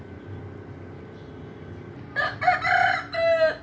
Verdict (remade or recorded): recorded